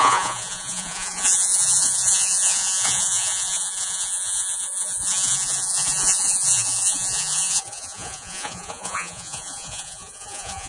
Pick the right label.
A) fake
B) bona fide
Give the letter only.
A